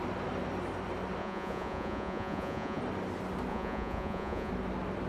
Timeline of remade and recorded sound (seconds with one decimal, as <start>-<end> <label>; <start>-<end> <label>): 0.0-1.2 recorded; 1.2-2.8 remade; 2.8-3.5 recorded; 3.5-4.5 remade; 4.5-5.1 recorded